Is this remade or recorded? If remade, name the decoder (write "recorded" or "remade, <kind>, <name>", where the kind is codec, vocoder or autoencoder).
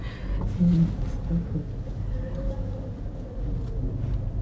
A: recorded